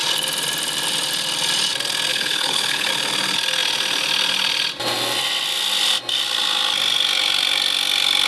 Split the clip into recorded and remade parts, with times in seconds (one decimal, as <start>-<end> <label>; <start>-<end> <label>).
0.0-2.1 recorded; 2.1-2.9 remade; 2.9-8.3 recorded